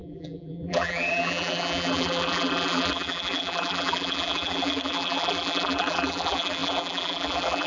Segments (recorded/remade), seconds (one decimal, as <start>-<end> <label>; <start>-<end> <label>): 0.0-7.7 remade